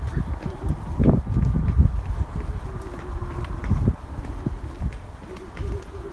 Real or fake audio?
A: real